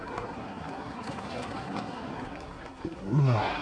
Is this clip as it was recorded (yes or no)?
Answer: no